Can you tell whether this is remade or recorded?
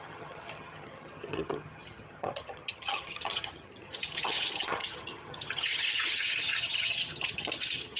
remade